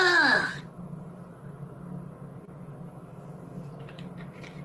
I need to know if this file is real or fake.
real